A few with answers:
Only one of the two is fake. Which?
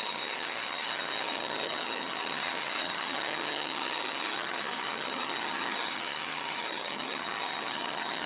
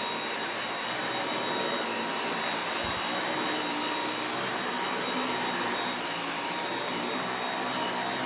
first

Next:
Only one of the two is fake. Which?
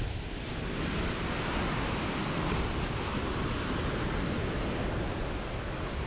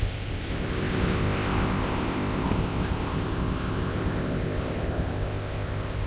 second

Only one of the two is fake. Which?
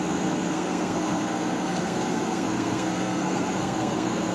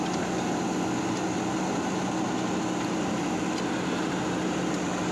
first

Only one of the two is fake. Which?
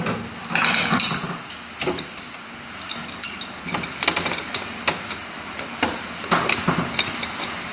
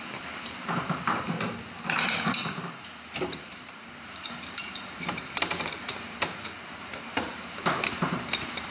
second